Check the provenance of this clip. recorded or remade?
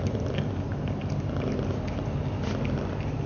recorded